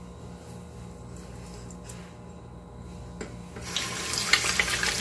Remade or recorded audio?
recorded